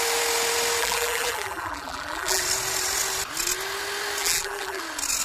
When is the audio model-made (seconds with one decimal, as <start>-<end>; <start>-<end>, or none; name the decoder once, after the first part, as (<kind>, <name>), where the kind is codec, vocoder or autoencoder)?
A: 0.8-2.4 (vocoder, BigVGAN v2); 4.2-4.8